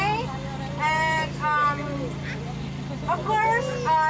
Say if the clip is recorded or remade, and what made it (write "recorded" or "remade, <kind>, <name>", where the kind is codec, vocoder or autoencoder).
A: recorded